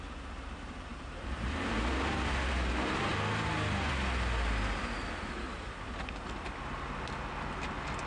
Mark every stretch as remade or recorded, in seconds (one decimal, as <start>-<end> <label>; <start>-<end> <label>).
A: 0.0-8.1 recorded